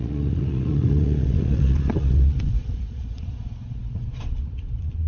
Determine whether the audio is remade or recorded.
remade